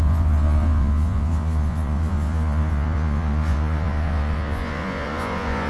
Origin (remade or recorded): remade